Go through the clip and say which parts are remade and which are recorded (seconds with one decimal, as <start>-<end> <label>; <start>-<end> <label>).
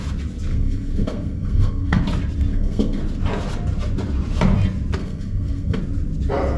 0.0-0.5 recorded; 0.5-2.0 remade; 2.0-2.5 recorded; 2.5-3.0 remade; 3.0-5.0 recorded; 5.0-5.8 remade; 5.8-6.6 recorded